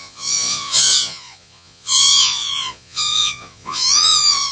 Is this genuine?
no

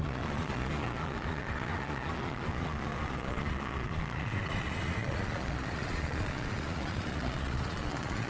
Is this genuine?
no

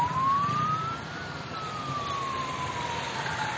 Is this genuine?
yes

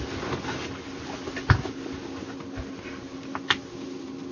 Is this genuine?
yes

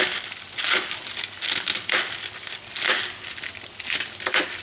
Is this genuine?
yes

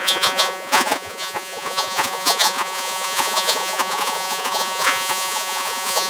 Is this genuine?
no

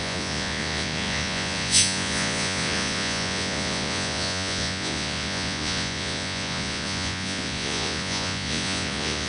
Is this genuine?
no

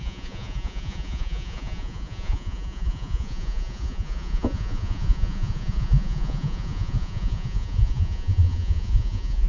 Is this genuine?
no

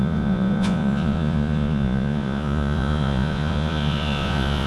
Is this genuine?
no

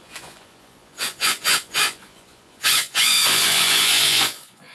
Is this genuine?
no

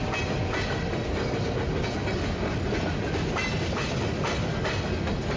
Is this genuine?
yes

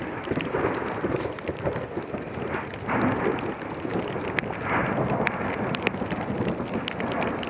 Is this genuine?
yes